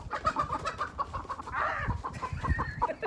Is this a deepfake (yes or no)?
yes